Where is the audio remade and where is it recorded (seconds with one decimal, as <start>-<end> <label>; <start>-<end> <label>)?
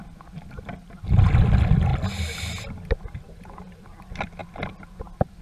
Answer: 0.0-5.4 recorded